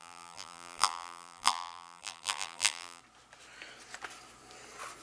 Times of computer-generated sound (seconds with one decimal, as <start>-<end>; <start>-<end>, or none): 0.0-3.0